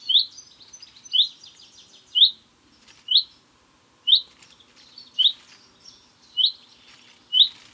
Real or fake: real